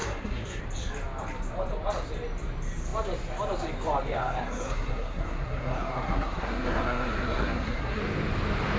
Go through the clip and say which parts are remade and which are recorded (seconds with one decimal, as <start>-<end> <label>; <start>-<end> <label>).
0.0-0.6 remade; 0.6-4.2 recorded; 4.2-8.0 remade; 8.0-8.8 recorded